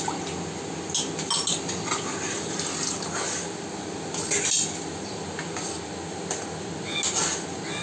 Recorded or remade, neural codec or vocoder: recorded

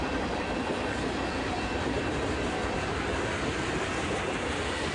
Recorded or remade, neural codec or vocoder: recorded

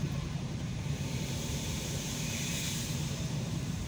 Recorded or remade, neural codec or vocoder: remade, vocoder, BigVGAN v2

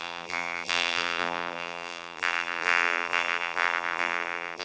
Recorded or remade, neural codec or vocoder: remade, vocoder, BigVGAN v2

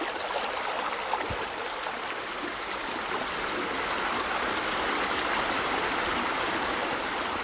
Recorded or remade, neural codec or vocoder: recorded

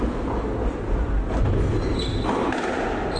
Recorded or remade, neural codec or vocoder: recorded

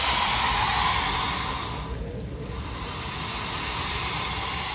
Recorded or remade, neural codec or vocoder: recorded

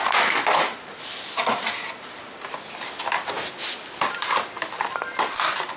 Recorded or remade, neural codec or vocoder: recorded